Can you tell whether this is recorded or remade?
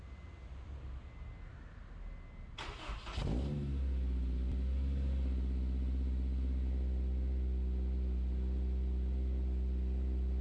recorded